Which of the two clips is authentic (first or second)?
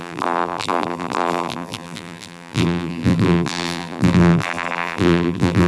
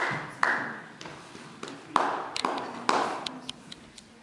second